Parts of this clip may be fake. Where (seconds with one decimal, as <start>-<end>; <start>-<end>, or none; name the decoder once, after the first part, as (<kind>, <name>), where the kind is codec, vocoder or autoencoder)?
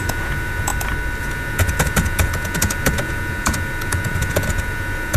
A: 0.0-0.7 (vocoder, Vocos); 1.2-5.2